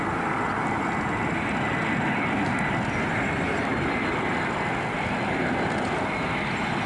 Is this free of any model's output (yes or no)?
yes